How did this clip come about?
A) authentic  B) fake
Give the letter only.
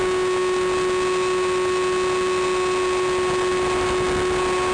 A